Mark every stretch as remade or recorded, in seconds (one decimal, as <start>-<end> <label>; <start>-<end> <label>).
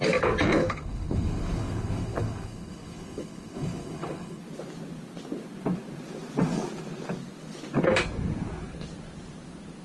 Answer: 0.0-0.6 recorded; 0.6-4.4 remade; 4.4-9.8 recorded